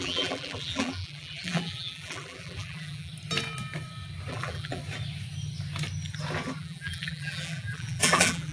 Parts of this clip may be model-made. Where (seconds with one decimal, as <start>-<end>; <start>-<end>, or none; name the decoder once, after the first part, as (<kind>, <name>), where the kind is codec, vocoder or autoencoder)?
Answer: 0.0-3.1 (vocoder, BigVGAN v2); 4.3-4.8; 6.6-8.5